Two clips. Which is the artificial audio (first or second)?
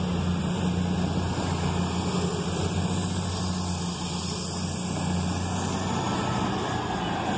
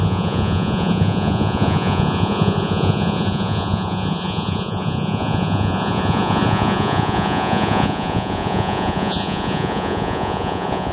second